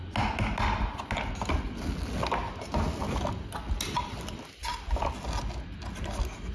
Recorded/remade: recorded